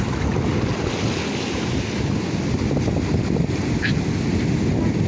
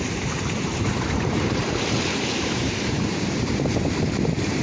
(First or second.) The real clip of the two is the first